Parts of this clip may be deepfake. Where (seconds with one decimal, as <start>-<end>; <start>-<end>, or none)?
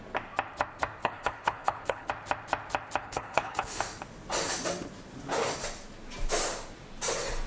1.0-2.1; 3.0-3.8